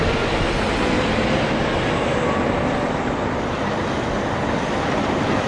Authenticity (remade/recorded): recorded